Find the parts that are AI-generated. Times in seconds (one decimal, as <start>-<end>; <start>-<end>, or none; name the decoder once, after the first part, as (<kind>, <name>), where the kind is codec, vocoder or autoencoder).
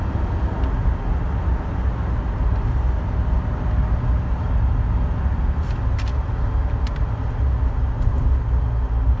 none